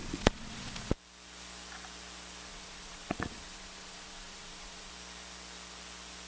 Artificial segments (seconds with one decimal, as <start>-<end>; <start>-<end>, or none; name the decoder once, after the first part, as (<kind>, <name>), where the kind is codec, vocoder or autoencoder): 0.0-0.9 (vocoder, Vocos); 2.5-4.9